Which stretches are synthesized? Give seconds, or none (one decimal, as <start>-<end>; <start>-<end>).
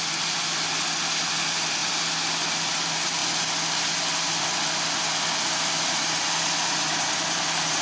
none